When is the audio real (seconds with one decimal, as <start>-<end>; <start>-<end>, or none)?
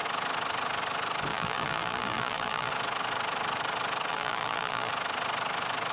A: 0.0-1.3; 2.7-4.1; 4.9-5.9